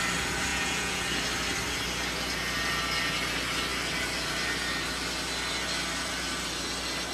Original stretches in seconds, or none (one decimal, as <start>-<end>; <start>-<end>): 0.0-0.5; 1.0-7.1